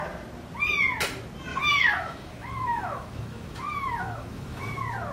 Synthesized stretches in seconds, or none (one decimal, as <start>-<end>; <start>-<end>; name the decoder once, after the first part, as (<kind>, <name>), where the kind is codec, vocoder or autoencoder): 1.5-4.6 (autoencoder, DAC-VAE)

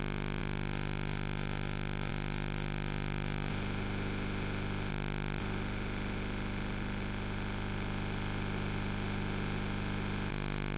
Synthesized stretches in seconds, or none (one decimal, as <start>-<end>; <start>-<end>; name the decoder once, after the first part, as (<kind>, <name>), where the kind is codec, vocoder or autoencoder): 3.5-4.9 (autoencoder, DAC-VAE); 5.4-10.3

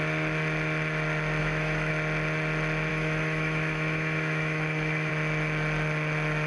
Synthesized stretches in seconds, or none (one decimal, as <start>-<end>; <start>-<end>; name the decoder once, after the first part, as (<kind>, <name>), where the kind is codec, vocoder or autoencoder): 1.4-1.9 (autoencoder, DAC-VAE); 2.9-5.1

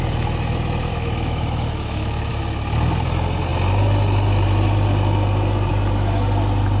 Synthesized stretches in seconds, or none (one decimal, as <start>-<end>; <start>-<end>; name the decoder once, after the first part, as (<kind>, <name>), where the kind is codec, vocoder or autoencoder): 0.9-2.3 (autoencoder, DAC-VAE)